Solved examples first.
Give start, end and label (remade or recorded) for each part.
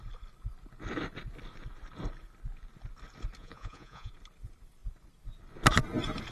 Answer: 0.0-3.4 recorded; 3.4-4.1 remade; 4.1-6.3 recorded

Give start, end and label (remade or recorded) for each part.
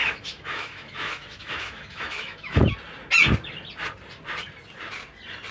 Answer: 0.0-2.7 remade; 2.7-5.5 recorded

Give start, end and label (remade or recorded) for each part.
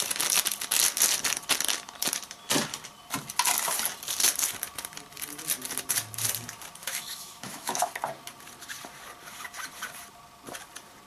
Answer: 0.0-6.8 recorded; 6.8-7.9 remade; 7.9-11.1 recorded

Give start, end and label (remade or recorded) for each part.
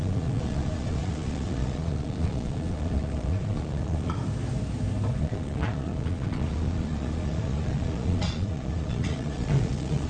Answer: 0.0-4.2 remade; 4.2-5.2 recorded; 5.2-10.1 remade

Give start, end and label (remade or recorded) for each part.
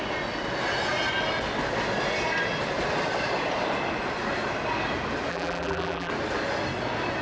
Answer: 0.0-5.3 recorded; 5.3-6.1 remade; 6.1-7.2 recorded